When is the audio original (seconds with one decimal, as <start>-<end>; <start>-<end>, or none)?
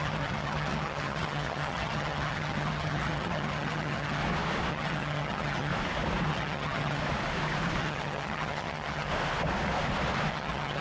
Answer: 4.2-4.7; 5.7-6.3; 7.0-7.8; 9.1-10.3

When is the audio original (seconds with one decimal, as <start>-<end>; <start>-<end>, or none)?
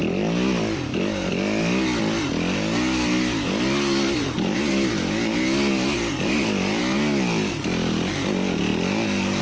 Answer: 0.0-9.4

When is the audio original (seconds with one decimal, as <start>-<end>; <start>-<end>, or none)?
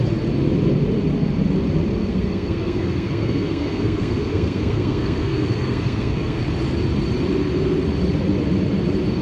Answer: 0.0-2.0; 6.4-9.2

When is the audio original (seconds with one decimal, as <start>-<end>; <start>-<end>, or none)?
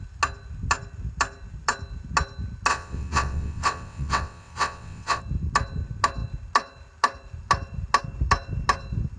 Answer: 0.0-2.7; 5.2-9.2